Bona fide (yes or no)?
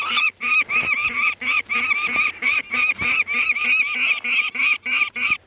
yes